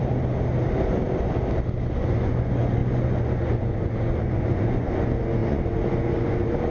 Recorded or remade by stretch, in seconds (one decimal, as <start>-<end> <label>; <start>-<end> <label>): 0.0-2.0 recorded; 2.0-6.7 remade